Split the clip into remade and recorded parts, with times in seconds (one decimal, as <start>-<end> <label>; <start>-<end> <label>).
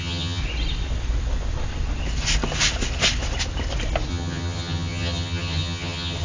0.0-0.4 remade; 0.4-4.1 recorded; 4.1-6.2 remade